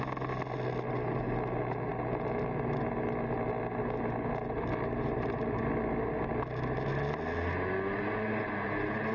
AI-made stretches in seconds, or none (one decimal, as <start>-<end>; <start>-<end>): none